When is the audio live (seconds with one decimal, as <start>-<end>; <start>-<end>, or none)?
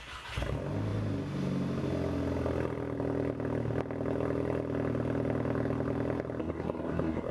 0.0-6.4